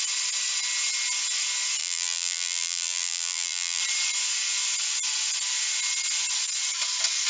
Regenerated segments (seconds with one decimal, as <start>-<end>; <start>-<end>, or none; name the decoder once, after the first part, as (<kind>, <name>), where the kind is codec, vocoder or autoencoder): 1.8-3.8 (vocoder, BigVGAN v2)